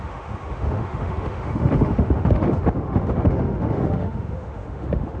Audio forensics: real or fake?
fake